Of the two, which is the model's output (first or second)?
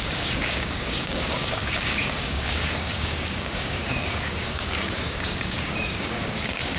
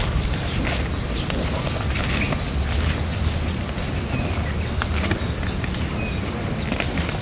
first